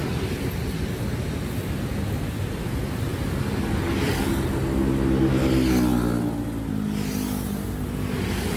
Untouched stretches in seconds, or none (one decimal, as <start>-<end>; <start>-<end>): 0.0-8.6